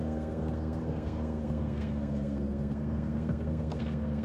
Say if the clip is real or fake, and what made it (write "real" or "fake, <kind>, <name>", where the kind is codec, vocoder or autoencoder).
fake, codec, SNAC